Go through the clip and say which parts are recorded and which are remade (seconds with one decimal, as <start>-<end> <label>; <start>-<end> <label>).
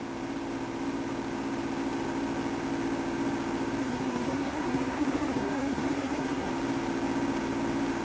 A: 0.0-3.8 recorded; 3.8-6.5 remade; 6.5-8.0 recorded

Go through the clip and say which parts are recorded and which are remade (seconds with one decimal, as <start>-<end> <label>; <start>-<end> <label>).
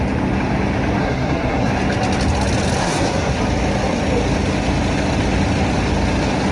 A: 0.0-1.0 recorded; 1.0-1.7 remade; 1.7-2.8 recorded; 2.8-3.4 remade; 3.4-6.5 recorded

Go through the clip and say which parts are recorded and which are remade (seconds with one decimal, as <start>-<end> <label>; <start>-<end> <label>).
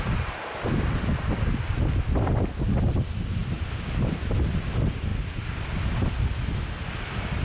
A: 0.0-7.4 recorded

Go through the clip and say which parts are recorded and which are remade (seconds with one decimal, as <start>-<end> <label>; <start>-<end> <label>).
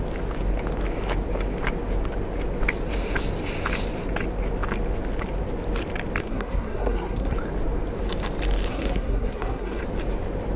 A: 0.0-6.2 recorded; 6.2-7.3 remade; 7.3-8.7 recorded; 8.7-9.8 remade; 9.8-10.6 recorded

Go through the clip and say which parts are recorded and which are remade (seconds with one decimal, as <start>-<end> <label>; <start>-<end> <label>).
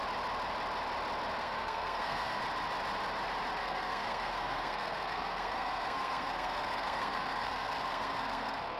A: 0.0-1.4 recorded; 1.4-2.4 remade; 2.4-3.6 recorded; 3.6-8.8 remade